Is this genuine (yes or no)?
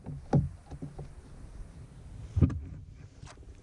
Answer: yes